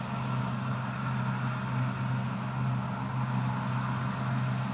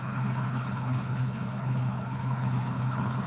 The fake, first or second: second